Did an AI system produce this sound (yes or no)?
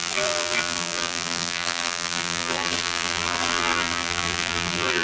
yes